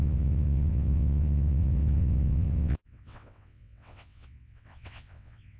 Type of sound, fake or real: fake